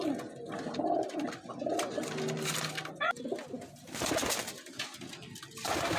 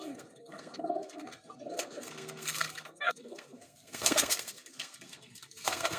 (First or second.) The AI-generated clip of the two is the second